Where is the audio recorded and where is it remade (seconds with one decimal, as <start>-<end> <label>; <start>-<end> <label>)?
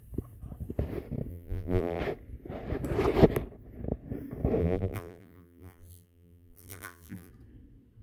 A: 0.0-1.3 recorded; 1.3-2.0 remade; 2.0-4.6 recorded; 4.6-7.3 remade; 7.3-8.0 recorded